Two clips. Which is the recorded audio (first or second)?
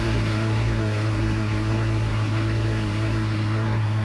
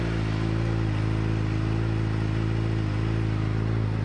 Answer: second